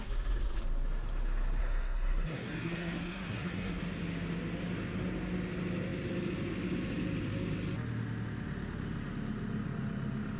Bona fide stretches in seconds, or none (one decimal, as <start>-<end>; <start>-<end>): 0.0-1.6; 3.8-10.4